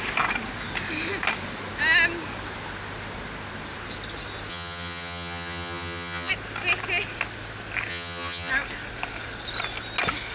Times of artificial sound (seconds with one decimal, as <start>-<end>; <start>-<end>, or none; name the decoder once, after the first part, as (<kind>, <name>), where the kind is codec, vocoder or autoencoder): 4.5-6.3 (vocoder, HiFi-GAN); 7.9-8.5